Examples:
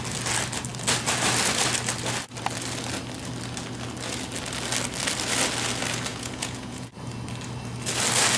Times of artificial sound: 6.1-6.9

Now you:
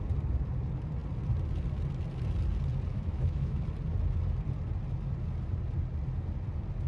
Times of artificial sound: 2.9-3.6

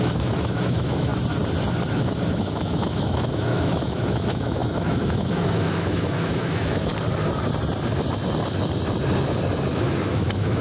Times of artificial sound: 0.0-1.1; 1.9-6.9; 9.7-10.6

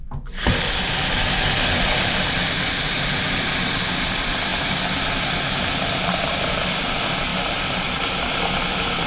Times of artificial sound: 7.3-7.9